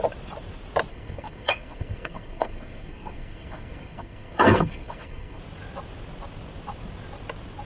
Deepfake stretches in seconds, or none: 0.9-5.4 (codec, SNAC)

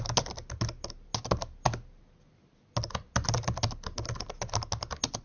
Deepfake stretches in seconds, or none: none

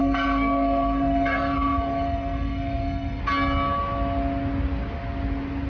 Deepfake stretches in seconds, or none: 0.0-3.2 (codec, SNAC)

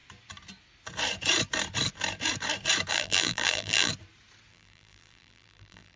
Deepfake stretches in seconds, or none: 2.9-3.9 (vocoder, BigVGAN v2); 4.5-6.0